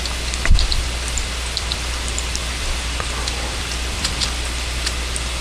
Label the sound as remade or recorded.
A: remade